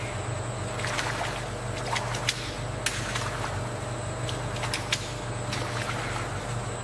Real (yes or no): yes